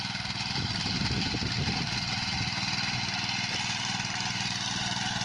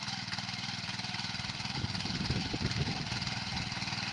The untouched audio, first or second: first